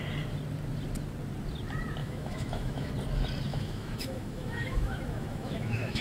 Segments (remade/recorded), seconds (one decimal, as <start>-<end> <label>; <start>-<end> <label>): 0.0-2.0 recorded; 2.0-2.9 remade; 2.9-3.5 recorded; 3.5-6.0 remade